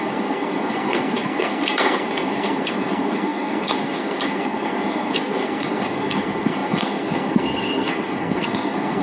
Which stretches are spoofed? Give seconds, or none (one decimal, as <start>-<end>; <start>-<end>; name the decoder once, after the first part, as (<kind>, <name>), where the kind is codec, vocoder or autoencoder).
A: 0.0-9.0 (codec, SNAC)